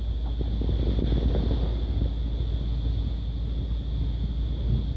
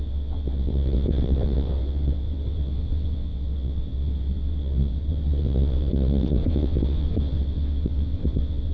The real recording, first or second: first